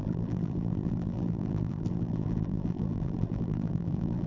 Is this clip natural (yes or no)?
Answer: no